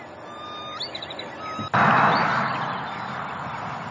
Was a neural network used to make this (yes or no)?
no